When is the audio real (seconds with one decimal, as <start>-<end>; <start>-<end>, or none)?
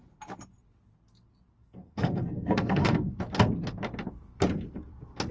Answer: 0.0-1.6; 3.1-5.3